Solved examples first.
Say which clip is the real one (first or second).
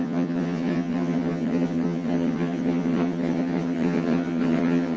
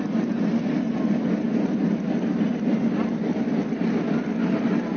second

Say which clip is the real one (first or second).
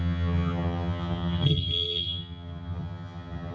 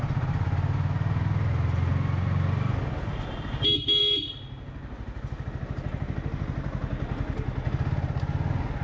second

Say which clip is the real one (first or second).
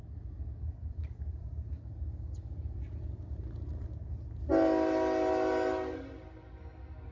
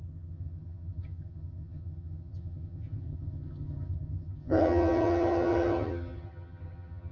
first